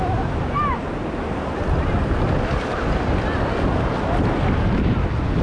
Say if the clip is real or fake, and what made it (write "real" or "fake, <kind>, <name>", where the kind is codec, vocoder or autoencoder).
real